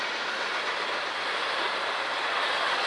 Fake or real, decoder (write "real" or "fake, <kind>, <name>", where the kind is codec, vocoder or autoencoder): real